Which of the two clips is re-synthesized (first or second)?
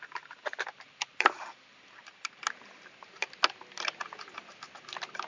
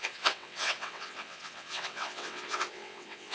second